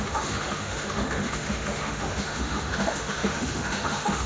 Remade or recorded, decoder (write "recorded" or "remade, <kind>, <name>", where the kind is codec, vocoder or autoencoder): remade, autoencoder, DAC-VAE